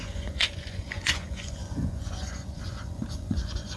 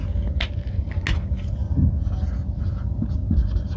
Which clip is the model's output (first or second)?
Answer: first